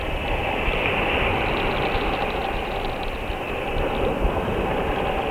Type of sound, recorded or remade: recorded